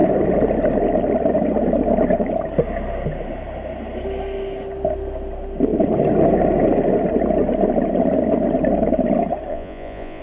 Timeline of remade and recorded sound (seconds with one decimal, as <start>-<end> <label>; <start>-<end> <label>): 0.0-9.5 recorded; 9.5-10.2 remade